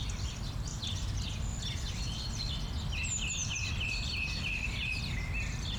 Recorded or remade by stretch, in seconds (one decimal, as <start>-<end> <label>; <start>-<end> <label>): 0.0-0.7 recorded; 0.7-2.5 remade; 2.5-3.4 recorded; 3.4-5.0 remade; 5.0-5.8 recorded